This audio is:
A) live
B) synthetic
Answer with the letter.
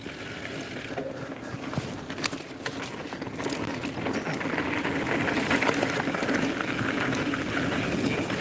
A